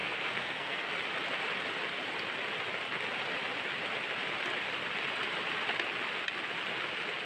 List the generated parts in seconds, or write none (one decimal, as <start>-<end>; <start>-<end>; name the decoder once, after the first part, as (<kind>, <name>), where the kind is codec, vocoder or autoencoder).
0.0-0.9 (codec, SNAC)